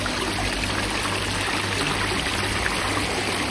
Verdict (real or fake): real